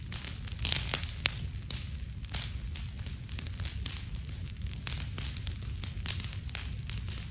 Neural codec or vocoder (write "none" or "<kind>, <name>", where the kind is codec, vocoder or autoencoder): none